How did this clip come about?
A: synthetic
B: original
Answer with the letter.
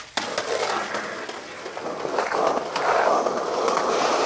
B